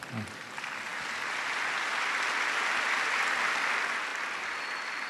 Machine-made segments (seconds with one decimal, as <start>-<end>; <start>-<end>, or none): none